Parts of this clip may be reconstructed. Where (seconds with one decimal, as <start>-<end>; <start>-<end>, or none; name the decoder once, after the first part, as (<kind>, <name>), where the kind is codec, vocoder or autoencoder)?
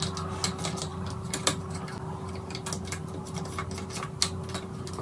none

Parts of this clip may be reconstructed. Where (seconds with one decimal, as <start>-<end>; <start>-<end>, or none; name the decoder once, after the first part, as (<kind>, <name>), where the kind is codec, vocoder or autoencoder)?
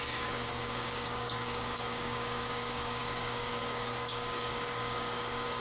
0.0-5.6 (codec, DAC)